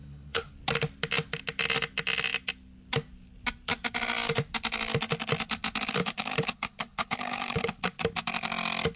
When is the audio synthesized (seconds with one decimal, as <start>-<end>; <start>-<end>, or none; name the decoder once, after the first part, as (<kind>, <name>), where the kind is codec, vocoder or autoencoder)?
0.0-0.5 (codec, HILCodec); 6.0-7.8